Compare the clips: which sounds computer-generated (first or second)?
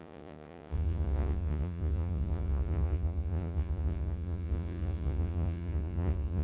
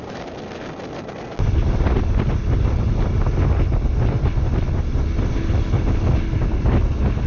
first